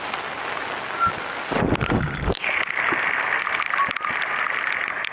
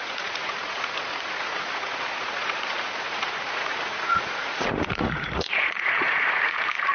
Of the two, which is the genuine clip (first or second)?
first